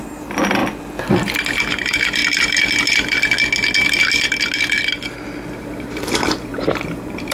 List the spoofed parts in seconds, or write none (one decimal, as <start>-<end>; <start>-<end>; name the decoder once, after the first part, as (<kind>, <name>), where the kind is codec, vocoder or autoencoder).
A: 0.0-0.6 (vocoder, BigVGAN v2); 1.7-2.2; 5.6-7.3